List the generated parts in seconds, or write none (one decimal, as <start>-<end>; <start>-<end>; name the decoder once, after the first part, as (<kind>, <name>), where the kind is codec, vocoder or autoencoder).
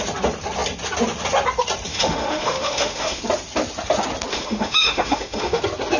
1.9-3.2 (autoencoder, DAC-VAE); 4.3-5.6